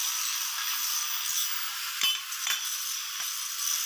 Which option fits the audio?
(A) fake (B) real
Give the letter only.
B